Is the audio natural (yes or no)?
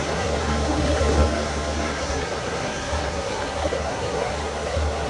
no